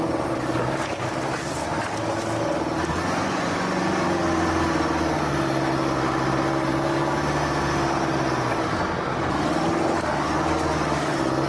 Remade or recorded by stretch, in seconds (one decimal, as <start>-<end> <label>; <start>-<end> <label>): 0.0-2.9 recorded; 2.9-3.9 remade; 3.9-11.5 recorded